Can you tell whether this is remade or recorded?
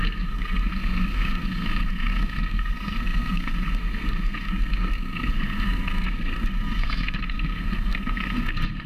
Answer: remade